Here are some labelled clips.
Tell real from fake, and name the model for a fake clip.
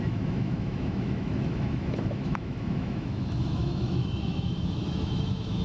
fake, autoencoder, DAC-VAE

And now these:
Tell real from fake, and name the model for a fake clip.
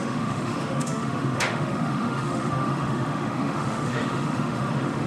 fake, autoencoder, DAC-VAE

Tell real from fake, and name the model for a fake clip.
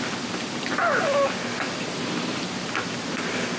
real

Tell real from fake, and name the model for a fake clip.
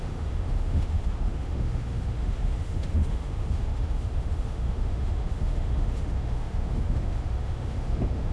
fake, autoencoder, DAC-VAE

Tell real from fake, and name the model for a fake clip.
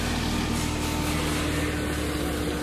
real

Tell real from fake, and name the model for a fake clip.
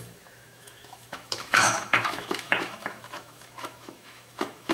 fake, autoencoder, DAC-VAE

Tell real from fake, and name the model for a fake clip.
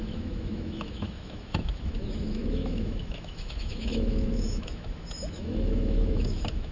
fake, autoencoder, DAC-VAE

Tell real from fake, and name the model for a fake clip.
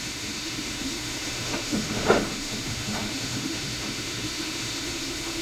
fake, autoencoder, DAC-VAE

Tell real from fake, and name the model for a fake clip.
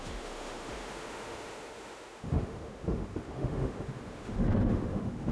fake, autoencoder, DAC-VAE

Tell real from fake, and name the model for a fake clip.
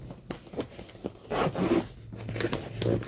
real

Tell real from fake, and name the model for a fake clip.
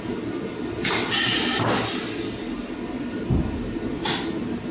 real